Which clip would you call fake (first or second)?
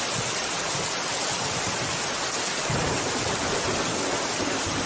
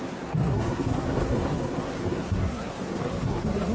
second